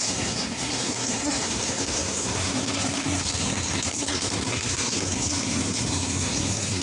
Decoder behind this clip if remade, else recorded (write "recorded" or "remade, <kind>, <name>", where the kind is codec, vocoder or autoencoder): remade, codec, SNAC